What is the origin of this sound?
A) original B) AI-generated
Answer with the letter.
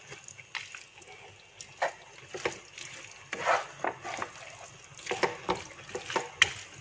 A